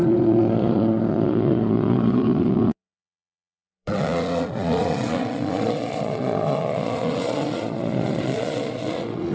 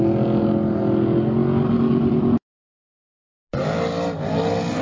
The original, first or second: second